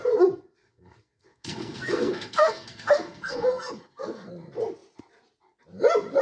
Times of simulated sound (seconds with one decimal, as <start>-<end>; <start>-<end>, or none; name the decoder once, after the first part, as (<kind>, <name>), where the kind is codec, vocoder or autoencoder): 0.6-4.3 (codec, SNAC)